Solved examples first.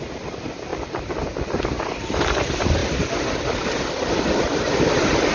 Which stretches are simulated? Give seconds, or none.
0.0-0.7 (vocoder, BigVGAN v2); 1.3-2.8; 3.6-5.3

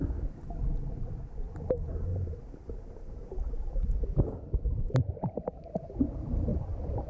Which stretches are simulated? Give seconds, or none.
2.1-5.0 (vocoder, BigVGAN v2); 6.5-7.1